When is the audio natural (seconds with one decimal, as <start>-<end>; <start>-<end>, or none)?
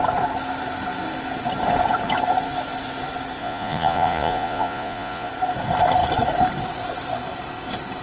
0.0-3.4; 5.3-8.0